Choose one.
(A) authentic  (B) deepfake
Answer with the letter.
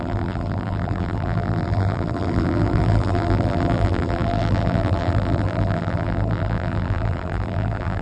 B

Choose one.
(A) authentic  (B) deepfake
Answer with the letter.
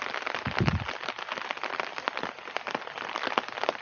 A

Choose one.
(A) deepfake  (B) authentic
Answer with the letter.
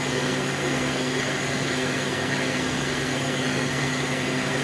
A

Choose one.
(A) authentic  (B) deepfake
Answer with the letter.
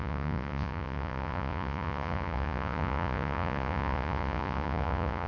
B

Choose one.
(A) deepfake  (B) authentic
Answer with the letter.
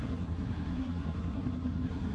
A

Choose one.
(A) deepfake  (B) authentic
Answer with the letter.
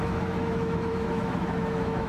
A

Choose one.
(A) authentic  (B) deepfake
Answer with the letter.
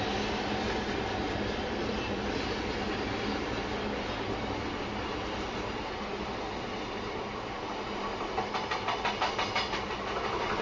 A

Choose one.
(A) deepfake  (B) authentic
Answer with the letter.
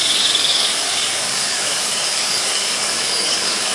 A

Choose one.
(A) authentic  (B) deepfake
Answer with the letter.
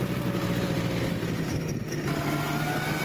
A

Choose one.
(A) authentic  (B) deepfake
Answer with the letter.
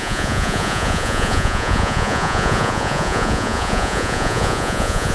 B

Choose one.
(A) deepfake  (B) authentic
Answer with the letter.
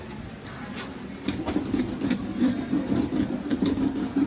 B